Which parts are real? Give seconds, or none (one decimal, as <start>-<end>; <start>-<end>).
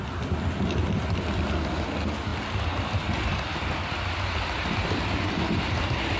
0.0-2.3